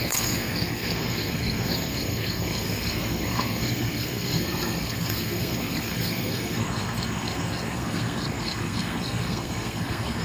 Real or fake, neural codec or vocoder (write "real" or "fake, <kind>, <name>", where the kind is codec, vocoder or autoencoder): fake, codec, SNAC